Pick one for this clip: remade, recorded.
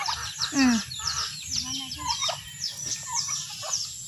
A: recorded